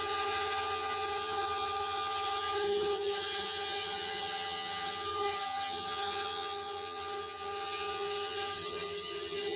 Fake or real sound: fake